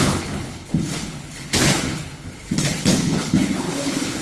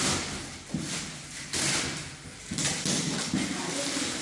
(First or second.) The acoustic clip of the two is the second